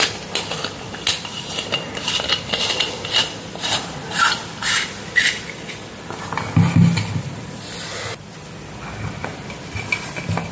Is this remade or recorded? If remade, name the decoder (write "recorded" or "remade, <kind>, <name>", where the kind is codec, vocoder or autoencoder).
recorded